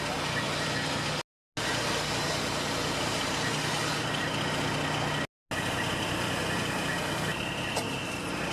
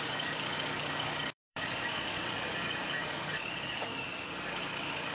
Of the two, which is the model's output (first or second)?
second